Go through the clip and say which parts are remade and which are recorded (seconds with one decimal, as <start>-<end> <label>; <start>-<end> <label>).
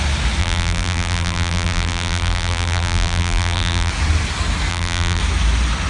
0.0-0.4 recorded; 0.4-3.9 remade; 3.9-4.7 recorded; 4.7-5.2 remade; 5.2-5.9 recorded